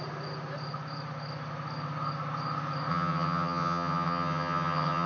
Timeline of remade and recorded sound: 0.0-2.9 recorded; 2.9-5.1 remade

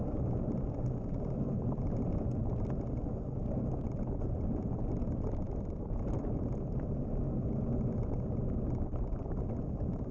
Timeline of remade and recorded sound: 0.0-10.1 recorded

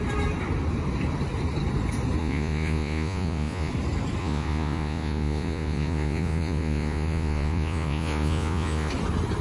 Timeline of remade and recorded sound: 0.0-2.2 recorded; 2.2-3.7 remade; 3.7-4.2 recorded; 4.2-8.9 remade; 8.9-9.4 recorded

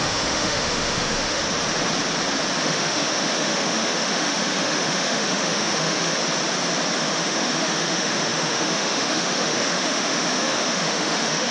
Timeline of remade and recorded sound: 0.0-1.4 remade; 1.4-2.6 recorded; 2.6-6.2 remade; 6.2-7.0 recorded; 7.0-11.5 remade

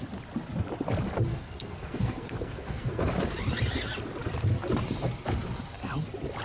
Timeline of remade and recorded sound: 0.0-1.3 recorded; 1.3-3.0 remade; 3.0-6.4 recorded